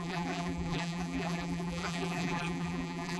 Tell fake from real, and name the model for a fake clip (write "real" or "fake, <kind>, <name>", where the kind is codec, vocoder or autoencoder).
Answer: fake, vocoder, BigVGAN v2